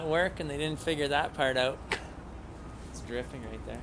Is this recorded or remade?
recorded